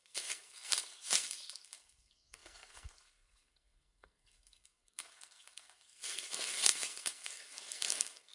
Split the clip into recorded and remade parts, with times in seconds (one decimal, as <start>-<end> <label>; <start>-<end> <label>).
0.0-8.3 remade